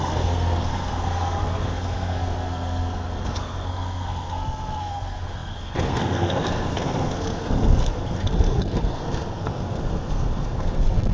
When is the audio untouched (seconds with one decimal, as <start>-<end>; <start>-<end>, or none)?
none